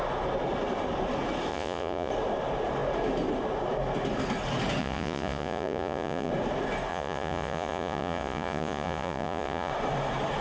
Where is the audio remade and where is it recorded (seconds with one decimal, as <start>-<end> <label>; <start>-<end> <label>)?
0.0-1.5 recorded; 1.5-2.1 remade; 2.1-4.8 recorded; 4.8-6.3 remade; 6.3-6.9 recorded; 6.9-9.7 remade; 9.7-10.4 recorded